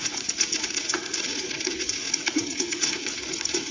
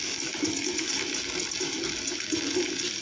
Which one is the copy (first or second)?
first